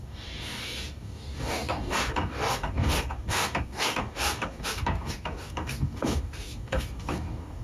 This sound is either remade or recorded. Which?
remade